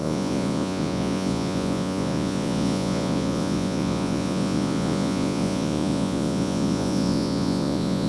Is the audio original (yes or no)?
no